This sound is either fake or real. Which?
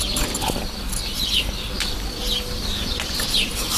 real